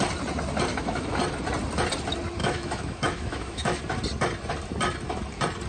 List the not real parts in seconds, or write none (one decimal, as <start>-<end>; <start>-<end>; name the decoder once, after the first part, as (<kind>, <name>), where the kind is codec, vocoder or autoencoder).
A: 0.7-1.2 (autoencoder, DAC-VAE); 2.4-3.8